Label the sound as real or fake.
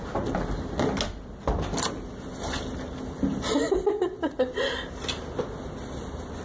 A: real